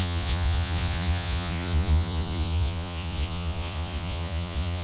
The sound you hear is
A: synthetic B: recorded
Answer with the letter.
A